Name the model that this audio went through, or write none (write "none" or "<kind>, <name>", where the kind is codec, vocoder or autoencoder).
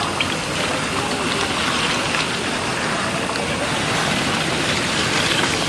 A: none